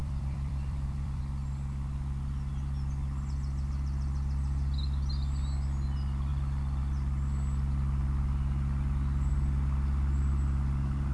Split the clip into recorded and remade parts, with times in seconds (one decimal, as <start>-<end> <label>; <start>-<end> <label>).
0.0-1.2 remade; 1.2-6.3 recorded; 6.3-6.8 remade; 6.8-11.1 recorded